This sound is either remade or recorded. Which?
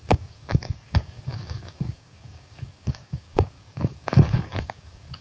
remade